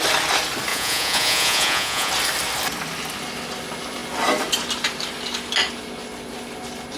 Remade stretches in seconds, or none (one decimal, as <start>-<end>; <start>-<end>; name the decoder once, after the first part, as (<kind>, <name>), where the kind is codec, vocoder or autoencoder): 0.7-2.1 (vocoder, Vocos)